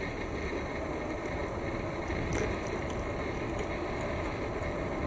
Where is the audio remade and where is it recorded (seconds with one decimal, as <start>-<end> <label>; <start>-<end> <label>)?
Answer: 0.0-5.1 recorded